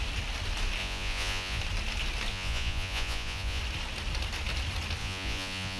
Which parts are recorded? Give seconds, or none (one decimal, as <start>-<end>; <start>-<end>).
0.0-0.8; 1.6-2.3; 3.6-5.0